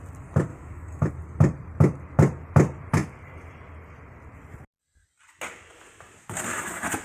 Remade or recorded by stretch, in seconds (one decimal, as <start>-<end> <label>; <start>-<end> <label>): 0.0-0.5 recorded; 0.5-1.1 remade; 1.1-7.0 recorded